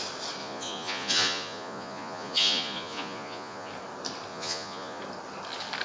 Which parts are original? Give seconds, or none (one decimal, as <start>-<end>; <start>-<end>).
0.0-0.4; 3.7-4.3; 5.0-5.8